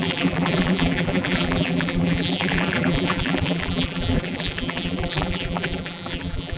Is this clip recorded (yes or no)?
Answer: no